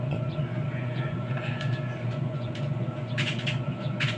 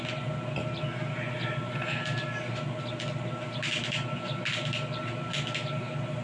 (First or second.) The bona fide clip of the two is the second